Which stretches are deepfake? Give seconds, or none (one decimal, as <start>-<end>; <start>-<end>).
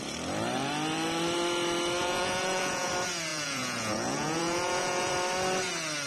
2.0-2.9; 3.3-5.1